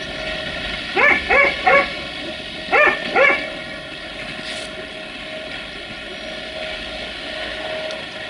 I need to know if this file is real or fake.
real